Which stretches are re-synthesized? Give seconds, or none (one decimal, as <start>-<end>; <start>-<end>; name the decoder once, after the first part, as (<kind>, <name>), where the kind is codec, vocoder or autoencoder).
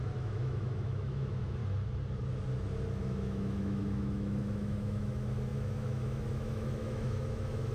0.0-1.6 (autoencoder, DAC-VAE); 3.0-7.7